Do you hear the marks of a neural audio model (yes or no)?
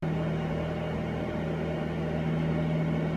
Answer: no